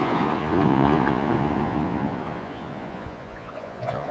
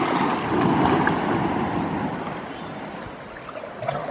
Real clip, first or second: second